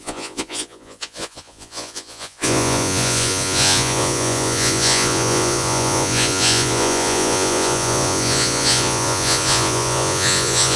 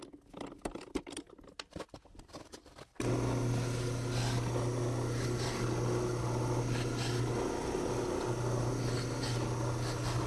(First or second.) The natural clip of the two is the second